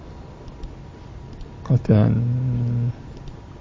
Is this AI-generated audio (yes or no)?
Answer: no